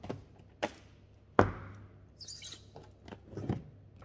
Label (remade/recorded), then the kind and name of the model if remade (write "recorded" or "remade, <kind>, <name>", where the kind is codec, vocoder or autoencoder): recorded